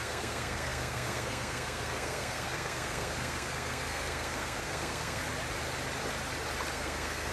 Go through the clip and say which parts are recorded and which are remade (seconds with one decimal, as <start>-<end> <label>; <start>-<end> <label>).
0.0-5.2 remade; 5.2-6.7 recorded; 6.7-7.3 remade

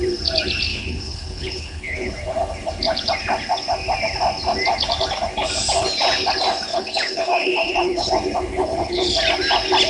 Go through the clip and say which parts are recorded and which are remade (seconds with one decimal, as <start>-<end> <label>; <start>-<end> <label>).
0.0-0.7 recorded; 0.7-2.1 remade; 2.1-6.7 recorded; 6.7-8.1 remade; 8.1-8.5 recorded; 8.5-9.1 remade; 9.1-9.9 recorded

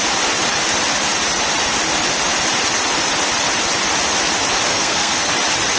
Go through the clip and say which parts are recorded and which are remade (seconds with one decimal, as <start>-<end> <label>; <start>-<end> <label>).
0.0-4.7 recorded; 4.7-5.3 remade; 5.3-5.8 recorded

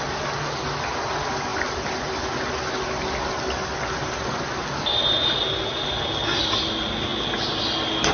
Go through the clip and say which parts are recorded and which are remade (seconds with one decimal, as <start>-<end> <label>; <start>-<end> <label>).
0.0-8.1 recorded

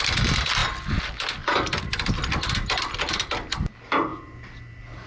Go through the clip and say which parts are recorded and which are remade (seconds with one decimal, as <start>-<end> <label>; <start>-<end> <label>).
0.0-5.1 recorded

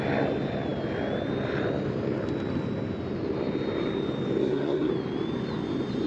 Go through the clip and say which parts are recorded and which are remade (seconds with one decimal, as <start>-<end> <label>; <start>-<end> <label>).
0.0-4.4 recorded; 4.4-4.9 remade; 4.9-6.1 recorded

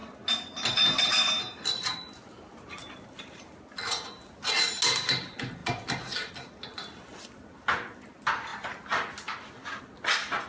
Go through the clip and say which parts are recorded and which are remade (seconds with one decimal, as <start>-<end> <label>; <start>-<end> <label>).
0.0-10.5 recorded

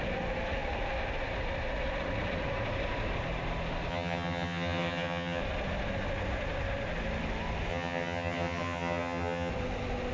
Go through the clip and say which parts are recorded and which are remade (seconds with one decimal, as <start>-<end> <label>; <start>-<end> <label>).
0.0-3.9 recorded; 3.9-5.4 remade; 5.4-7.7 recorded; 7.7-9.5 remade; 9.5-10.1 recorded